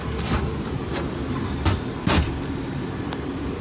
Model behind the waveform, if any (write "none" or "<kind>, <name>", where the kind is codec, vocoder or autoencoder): none